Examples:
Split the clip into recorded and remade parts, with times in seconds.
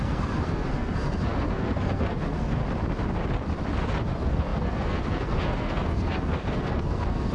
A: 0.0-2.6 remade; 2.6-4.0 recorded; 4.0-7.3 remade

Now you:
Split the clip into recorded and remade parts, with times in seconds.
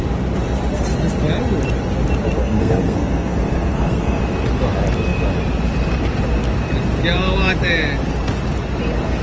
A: 0.0-2.4 recorded; 2.4-4.2 remade; 4.2-9.2 recorded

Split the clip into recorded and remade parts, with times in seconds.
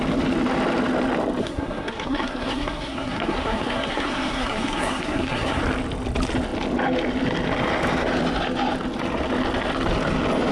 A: 0.0-1.4 recorded; 1.4-5.6 remade; 5.6-10.5 recorded